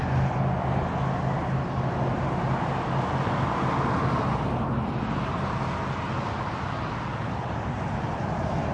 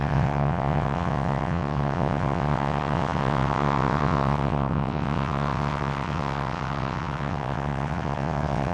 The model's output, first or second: second